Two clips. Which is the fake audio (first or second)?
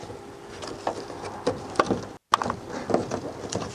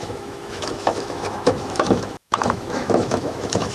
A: second